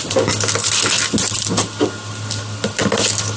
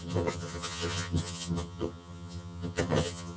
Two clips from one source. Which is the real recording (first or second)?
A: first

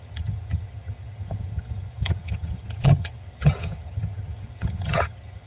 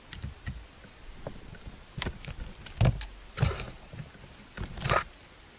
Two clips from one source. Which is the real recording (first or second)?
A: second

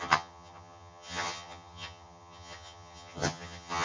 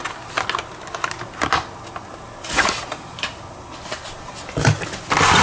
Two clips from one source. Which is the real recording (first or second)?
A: second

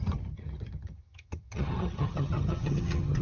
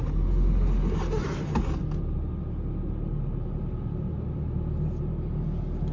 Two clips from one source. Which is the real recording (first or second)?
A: second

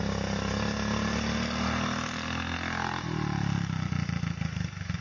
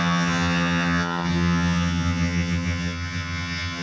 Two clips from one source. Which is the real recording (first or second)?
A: first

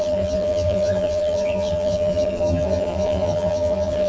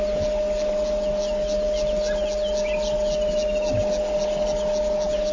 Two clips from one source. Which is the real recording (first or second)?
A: second